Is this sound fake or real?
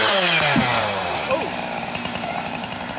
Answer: fake